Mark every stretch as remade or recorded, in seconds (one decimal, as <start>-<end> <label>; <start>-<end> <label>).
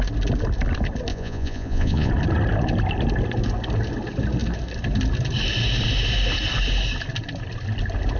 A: 0.0-1.1 recorded; 1.1-2.1 remade; 2.1-8.2 recorded